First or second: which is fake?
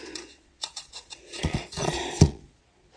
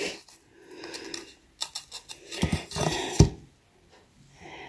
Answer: first